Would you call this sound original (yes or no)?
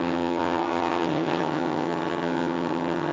no